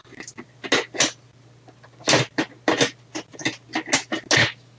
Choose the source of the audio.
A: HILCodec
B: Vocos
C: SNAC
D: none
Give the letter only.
D